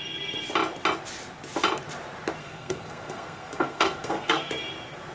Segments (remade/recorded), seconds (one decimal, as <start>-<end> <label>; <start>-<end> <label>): 0.0-2.4 recorded; 2.4-4.5 remade; 4.5-5.1 recorded